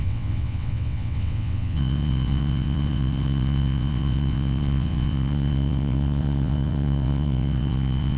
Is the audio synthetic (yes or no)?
yes